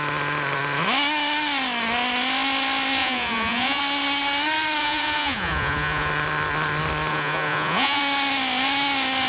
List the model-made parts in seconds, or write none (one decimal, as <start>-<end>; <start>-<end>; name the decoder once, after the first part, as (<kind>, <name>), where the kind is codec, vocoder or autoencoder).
3.0-3.8 (vocoder, Vocos); 4.8-6.1; 7.1-8.0

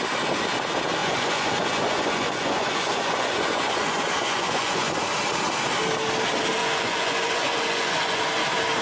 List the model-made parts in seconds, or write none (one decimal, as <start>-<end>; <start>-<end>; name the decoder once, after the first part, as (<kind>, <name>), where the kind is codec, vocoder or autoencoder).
1.0-4.9 (vocoder, Vocos); 6.6-8.2

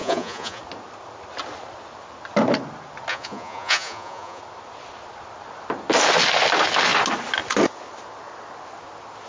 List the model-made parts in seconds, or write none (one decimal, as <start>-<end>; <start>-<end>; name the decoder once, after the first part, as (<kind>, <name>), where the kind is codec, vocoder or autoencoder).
0.0-0.6 (vocoder, Vocos); 3.1-4.4